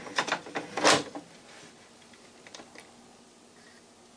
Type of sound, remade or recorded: recorded